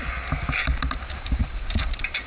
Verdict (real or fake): fake